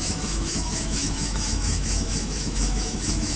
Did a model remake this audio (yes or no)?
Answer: yes